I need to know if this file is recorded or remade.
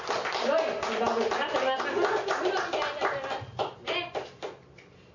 recorded